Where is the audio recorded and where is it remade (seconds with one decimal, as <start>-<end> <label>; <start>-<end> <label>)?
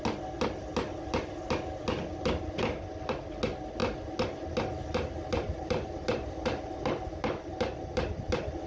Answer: 0.0-8.7 recorded